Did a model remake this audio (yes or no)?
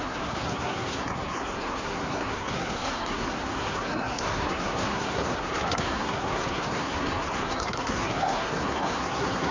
yes